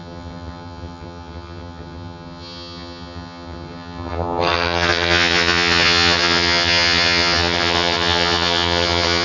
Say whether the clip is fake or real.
fake